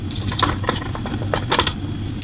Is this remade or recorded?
recorded